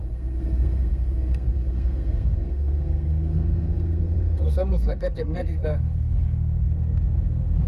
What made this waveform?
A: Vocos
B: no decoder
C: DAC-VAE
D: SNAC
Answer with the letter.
D